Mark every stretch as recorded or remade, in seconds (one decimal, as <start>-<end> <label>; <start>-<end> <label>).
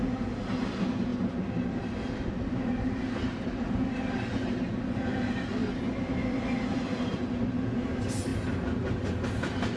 0.0-9.8 recorded